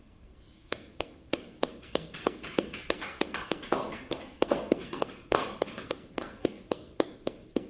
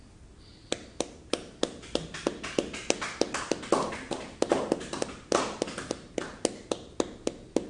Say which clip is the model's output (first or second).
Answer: first